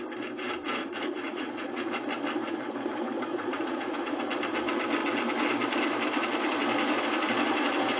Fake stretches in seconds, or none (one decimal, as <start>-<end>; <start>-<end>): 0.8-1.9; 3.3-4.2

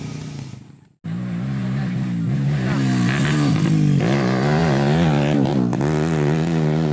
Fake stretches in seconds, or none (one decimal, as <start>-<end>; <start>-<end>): none

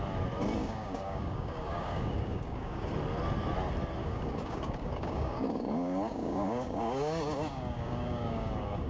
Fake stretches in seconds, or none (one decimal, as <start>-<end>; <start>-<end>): 0.6-2.9; 4.0-8.9